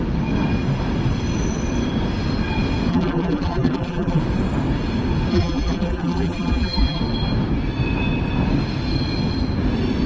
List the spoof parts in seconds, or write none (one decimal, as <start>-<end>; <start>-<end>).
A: 2.9-4.2; 5.3-7.0